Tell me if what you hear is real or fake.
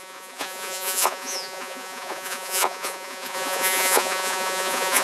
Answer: fake